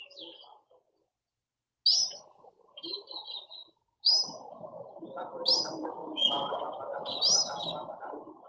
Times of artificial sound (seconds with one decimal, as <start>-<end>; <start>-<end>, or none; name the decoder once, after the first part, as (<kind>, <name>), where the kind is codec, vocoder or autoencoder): none